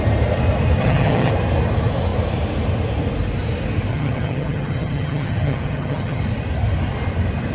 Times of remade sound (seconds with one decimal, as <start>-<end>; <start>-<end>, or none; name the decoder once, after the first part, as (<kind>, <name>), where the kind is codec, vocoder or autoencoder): 0.8-1.3 (vocoder, HiFi-GAN); 3.9-6.2